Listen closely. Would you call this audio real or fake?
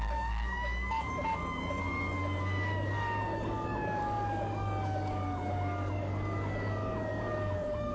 fake